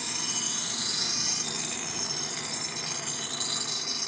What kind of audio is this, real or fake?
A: real